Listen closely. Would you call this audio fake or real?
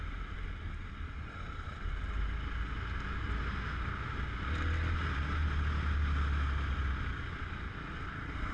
real